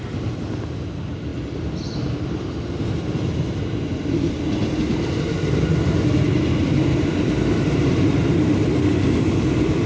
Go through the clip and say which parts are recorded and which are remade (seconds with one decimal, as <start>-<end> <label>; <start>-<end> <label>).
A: 0.0-9.9 recorded